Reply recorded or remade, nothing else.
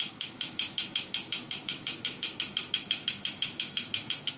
remade